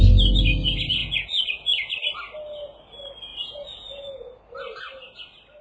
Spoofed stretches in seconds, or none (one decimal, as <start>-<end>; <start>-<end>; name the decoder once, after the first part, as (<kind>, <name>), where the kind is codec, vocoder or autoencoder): 1.0-1.9 (vocoder, Vocos); 3.3-4.3